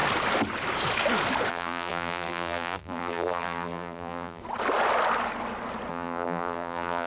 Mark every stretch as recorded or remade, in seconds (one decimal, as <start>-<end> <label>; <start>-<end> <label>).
0.0-1.5 recorded; 1.5-4.4 remade; 4.4-5.9 recorded; 5.9-7.1 remade